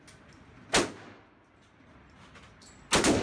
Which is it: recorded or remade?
recorded